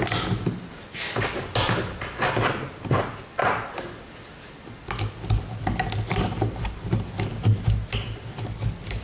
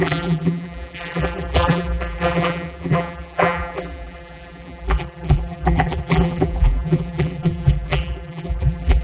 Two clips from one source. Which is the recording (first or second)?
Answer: first